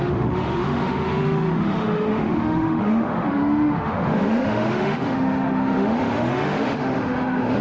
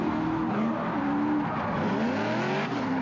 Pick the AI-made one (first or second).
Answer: first